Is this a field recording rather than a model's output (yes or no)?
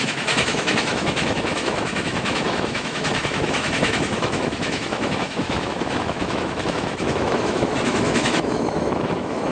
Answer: no